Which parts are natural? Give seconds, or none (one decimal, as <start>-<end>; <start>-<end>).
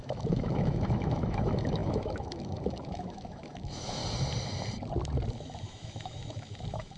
4.0-5.3